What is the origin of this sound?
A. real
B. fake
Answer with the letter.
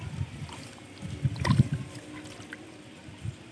A